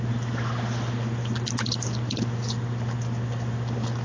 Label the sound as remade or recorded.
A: recorded